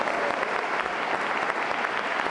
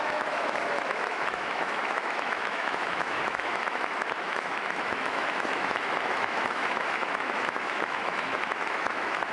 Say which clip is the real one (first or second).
first